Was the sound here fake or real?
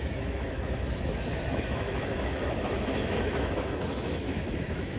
fake